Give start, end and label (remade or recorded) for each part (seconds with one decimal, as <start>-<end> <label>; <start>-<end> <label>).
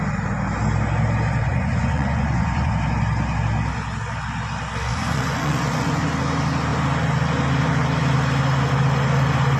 0.0-1.4 recorded; 1.4-2.7 remade; 2.7-4.9 recorded; 4.9-6.1 remade; 6.1-9.6 recorded